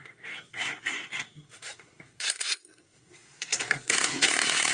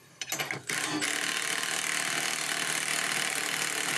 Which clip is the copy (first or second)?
first